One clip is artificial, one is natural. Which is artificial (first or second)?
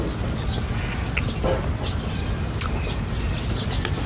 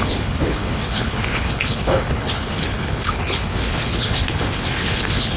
second